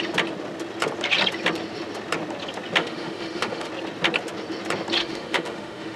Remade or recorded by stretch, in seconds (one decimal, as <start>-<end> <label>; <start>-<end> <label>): 0.0-2.8 recorded; 2.8-3.7 remade; 3.7-5.0 recorded; 5.0-6.0 remade